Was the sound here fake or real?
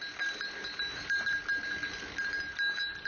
real